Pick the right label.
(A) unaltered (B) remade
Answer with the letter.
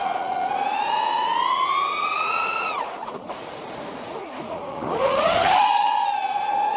B